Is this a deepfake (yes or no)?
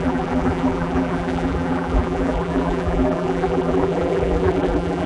yes